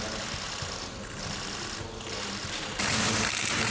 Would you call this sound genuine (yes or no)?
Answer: yes